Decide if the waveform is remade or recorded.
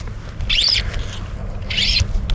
recorded